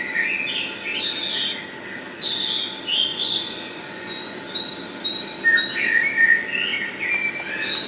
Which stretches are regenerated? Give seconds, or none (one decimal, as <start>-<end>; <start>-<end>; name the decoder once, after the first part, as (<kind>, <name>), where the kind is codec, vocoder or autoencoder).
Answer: 3.1-4.4 (vocoder, Vocos)